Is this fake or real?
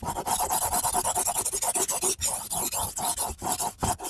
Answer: real